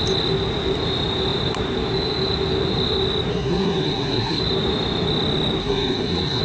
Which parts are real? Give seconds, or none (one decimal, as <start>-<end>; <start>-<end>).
0.0-3.3; 4.4-5.6